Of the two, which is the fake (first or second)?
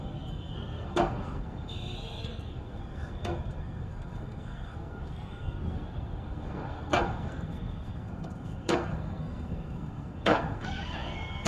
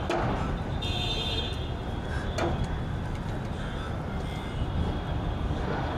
first